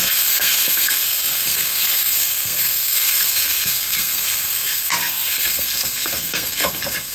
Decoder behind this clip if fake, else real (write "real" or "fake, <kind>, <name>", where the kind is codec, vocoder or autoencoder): fake, codec, SNAC